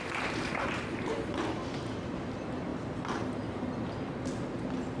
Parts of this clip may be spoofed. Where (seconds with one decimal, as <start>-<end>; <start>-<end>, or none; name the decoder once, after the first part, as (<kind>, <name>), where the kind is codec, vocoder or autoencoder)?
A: none